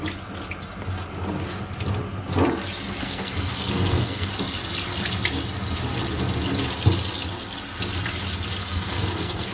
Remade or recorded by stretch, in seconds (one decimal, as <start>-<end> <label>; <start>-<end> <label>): 0.0-3.0 recorded; 3.0-4.3 remade; 4.3-8.6 recorded; 8.6-9.5 remade